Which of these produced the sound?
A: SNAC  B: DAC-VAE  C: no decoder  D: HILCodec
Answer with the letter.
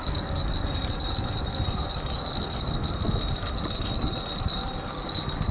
C